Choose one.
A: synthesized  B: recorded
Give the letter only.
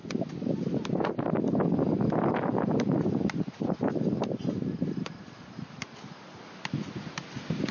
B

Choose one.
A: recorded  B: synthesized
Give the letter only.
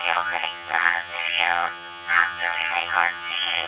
B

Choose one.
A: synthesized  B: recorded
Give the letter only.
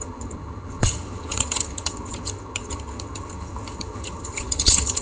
A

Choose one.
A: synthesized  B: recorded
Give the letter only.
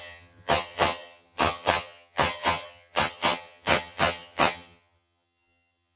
A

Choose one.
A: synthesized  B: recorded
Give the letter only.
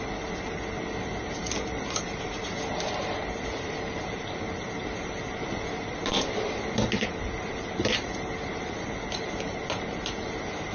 B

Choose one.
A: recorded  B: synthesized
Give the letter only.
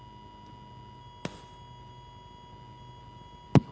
A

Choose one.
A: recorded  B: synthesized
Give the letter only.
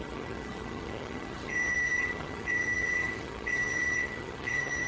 B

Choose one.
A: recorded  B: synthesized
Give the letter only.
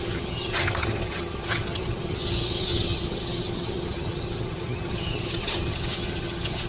B